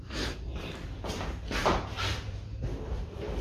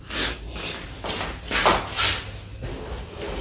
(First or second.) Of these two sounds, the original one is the second